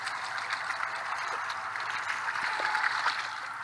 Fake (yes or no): no